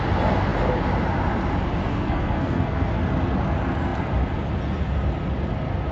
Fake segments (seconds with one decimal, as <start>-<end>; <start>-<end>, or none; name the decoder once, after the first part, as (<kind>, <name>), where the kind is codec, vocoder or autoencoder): 1.9-3.0 (codec, SNAC)